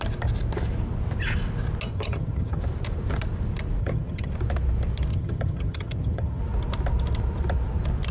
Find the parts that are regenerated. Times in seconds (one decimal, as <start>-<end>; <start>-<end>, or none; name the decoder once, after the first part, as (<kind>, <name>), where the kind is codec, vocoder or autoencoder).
1.9-2.6 (vocoder, HiFi-GAN); 3.8-4.3; 5.1-6.4